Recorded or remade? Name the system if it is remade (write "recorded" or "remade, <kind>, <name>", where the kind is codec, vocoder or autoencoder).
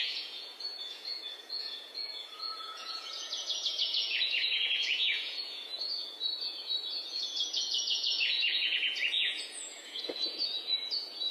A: remade, vocoder, Vocos